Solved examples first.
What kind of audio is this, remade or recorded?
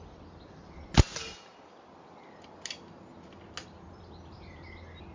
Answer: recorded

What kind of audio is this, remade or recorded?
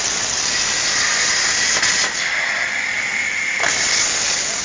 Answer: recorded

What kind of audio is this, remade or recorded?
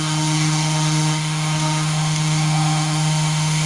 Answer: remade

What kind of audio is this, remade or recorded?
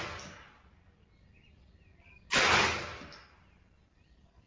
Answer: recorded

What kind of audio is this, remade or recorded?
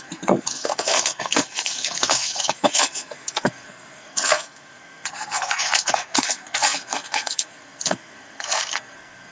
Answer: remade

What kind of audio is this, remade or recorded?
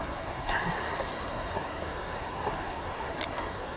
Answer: remade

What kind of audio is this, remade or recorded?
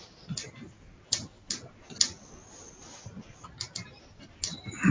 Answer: recorded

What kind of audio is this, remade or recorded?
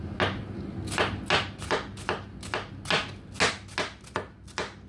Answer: recorded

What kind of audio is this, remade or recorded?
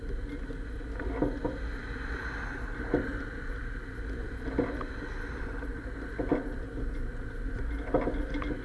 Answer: recorded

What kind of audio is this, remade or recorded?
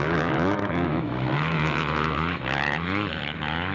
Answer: remade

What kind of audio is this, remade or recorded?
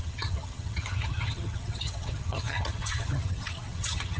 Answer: remade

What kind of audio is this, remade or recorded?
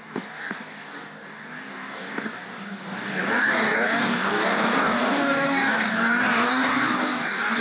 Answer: remade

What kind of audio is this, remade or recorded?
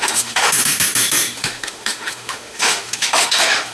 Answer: remade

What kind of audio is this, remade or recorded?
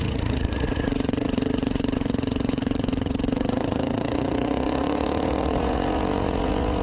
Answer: remade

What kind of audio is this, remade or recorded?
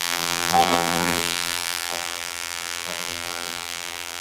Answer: remade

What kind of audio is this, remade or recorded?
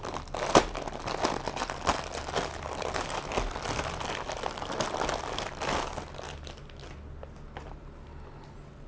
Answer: recorded